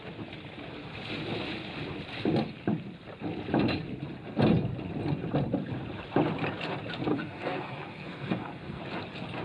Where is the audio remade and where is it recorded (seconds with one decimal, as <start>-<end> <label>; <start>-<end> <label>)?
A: 0.0-7.1 recorded; 7.1-8.8 remade; 8.8-9.4 recorded